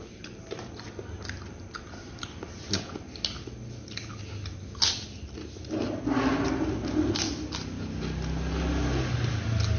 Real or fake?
real